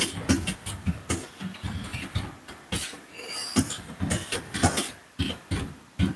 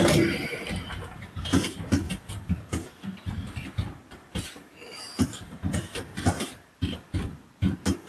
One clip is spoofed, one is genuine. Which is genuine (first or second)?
first